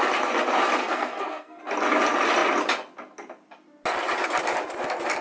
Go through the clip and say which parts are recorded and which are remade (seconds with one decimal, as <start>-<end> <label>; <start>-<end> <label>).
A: 0.0-0.8 recorded; 0.8-1.6 remade; 1.6-5.2 recorded